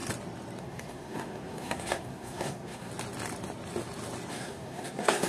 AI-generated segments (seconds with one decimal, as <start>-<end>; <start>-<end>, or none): 0.6-2.9; 4.3-5.3